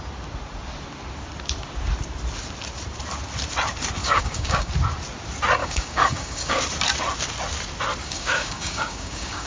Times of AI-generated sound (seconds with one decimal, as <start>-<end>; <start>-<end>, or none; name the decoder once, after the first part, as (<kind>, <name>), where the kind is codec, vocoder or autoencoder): 4.0-4.7 (codec, DAC); 5.6-6.6; 8.0-9.5